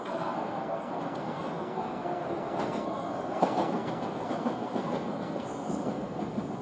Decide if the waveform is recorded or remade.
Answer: remade